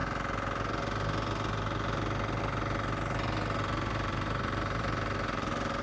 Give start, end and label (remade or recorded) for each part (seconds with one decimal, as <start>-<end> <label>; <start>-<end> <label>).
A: 0.0-3.6 recorded; 3.6-5.8 remade